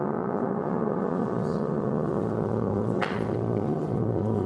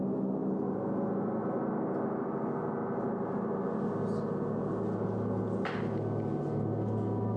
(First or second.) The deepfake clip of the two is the first